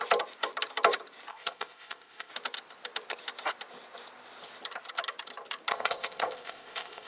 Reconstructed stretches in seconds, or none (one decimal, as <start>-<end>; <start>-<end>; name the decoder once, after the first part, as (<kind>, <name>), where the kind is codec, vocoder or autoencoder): 1.3-2.3 (codec, ZipCodec); 5.7-7.1